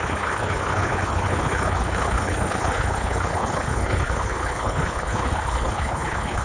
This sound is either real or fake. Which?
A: fake